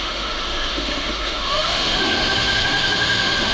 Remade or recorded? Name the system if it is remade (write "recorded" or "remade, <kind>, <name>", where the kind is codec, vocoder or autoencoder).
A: remade, autoencoder, DAC-VAE